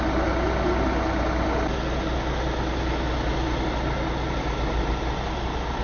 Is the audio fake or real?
real